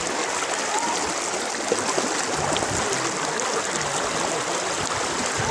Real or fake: real